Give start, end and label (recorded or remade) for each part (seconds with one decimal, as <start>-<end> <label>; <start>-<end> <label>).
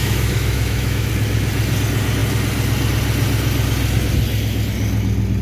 0.0-1.1 remade; 1.1-5.4 recorded